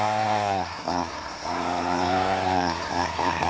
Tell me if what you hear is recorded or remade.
remade